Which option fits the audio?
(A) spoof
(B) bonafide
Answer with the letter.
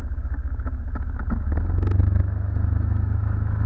A